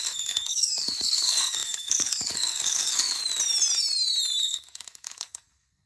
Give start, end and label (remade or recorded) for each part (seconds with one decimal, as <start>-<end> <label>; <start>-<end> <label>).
0.0-3.2 remade; 3.2-4.4 recorded; 4.4-5.9 remade